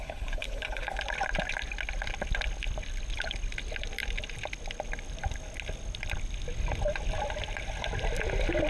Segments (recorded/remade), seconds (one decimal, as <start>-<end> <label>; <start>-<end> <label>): 0.0-1.0 remade; 1.0-8.7 recorded

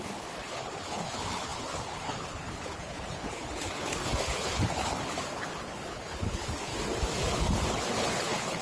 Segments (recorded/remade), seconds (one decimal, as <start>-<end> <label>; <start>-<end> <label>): 0.0-6.7 remade; 6.7-7.3 recorded; 7.3-8.6 remade

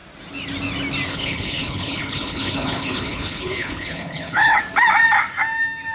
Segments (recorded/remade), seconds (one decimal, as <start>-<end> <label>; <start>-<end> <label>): 0.0-1.1 recorded; 1.1-4.6 remade; 4.6-5.9 recorded

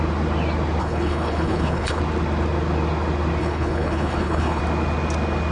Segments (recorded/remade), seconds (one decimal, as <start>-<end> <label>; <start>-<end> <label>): 0.0-0.8 recorded; 0.8-2.0 remade; 2.0-3.4 recorded; 3.4-4.6 remade; 4.6-5.5 recorded

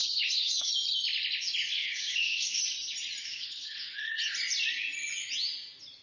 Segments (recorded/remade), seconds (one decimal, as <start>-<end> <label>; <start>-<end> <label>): 0.0-0.7 remade; 0.7-1.8 recorded; 1.8-2.6 remade; 2.6-3.2 recorded; 3.2-4.3 remade; 4.3-6.0 recorded